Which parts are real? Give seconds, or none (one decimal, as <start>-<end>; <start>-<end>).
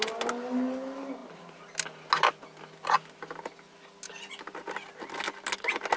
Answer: 0.0-6.0